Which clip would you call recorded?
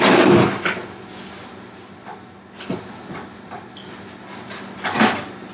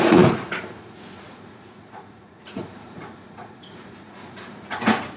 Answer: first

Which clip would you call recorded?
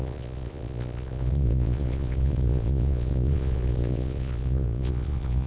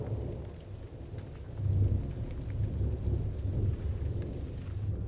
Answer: second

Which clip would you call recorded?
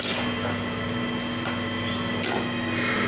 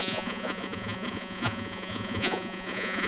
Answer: first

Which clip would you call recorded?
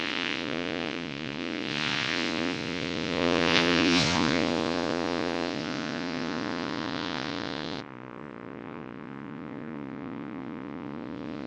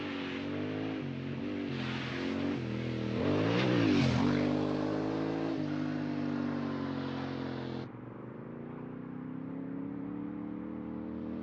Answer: second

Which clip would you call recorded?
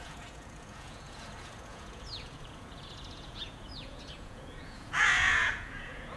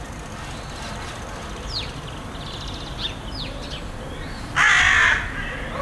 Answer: second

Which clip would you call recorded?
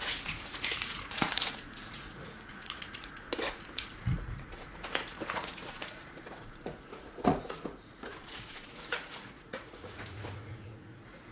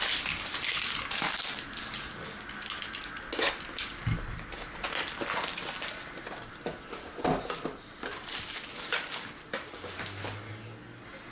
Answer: second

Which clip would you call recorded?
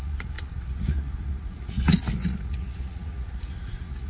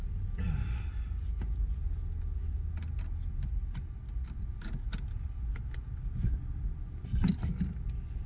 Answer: second